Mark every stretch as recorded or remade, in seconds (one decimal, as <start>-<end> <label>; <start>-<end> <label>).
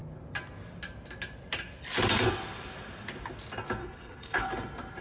0.0-3.8 recorded; 3.8-4.5 remade; 4.5-5.0 recorded